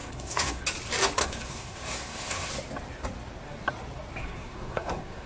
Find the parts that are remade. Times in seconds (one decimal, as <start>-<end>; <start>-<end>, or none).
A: 0.0-0.6; 1.2-2.5; 4.2-5.3